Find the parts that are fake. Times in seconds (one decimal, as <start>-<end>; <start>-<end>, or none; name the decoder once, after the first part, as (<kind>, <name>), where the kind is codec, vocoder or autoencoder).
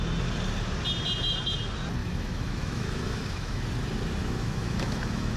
2.0-3.6 (autoencoder, DAC-VAE); 4.2-5.4